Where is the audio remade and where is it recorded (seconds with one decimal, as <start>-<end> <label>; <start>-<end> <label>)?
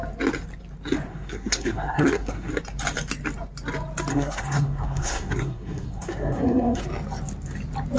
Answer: 0.0-1.1 recorded; 1.1-2.5 remade; 2.5-4.1 recorded; 4.1-6.8 remade; 6.8-8.0 recorded